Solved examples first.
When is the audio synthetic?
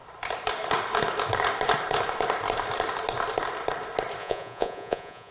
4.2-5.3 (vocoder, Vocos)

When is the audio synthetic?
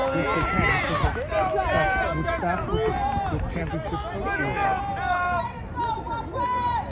2.9-3.6 (vocoder, BigVGAN v2); 4.9-6.9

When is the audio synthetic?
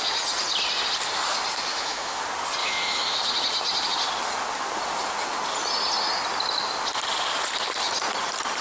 1.7-2.2 (autoencoder, DAC-VAE); 2.6-3.2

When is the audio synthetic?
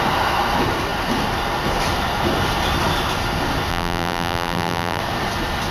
3.7-5.0 (vocoder, BigVGAN v2)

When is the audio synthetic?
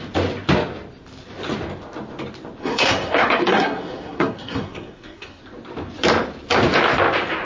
2.6-5.4 (codec, SNAC)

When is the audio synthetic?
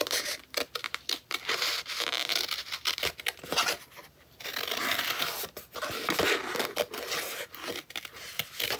none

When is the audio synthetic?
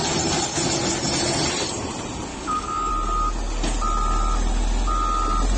2.3-2.9 (codec, DAC)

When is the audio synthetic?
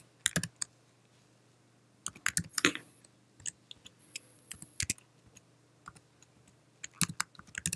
2.5-3.0 (vocoder, Vocos); 4.0-4.8